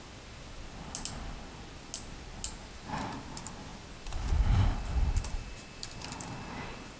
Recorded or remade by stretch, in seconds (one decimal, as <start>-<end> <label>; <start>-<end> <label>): 0.0-3.7 recorded; 3.7-7.0 remade